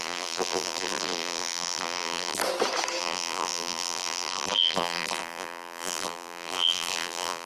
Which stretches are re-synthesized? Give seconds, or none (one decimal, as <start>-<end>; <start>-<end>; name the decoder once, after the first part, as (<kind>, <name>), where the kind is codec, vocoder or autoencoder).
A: 0.0-2.4 (vocoder, BigVGAN v2); 3.0-7.5